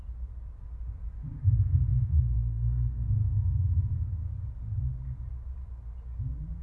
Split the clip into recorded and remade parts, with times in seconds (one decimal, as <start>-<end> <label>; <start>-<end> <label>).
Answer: 0.0-1.9 recorded; 1.9-4.3 remade; 4.3-6.6 recorded